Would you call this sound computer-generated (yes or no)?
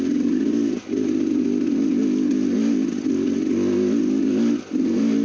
no